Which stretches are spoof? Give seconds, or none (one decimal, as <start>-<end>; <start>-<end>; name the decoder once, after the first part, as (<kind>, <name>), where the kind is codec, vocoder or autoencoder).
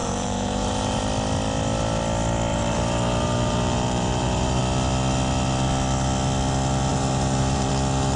0.0-1.0 (vocoder, BigVGAN v2); 2.5-4.6; 6.9-7.7